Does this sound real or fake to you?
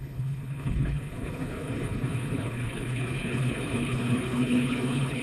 fake